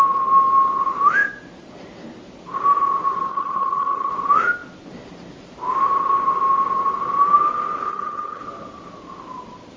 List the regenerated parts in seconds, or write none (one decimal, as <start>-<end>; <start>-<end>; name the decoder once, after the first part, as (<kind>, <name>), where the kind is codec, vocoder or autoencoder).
3.3-4.1 (vocoder, HiFi-GAN); 7.9-8.4